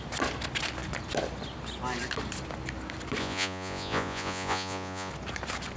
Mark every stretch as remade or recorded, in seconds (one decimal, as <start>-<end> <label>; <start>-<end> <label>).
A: 0.0-3.2 recorded; 3.2-5.1 remade; 5.1-5.8 recorded

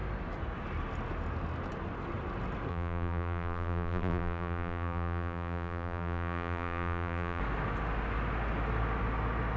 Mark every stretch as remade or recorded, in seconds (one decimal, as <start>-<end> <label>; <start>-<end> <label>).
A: 0.0-2.7 recorded; 2.7-7.4 remade; 7.4-9.6 recorded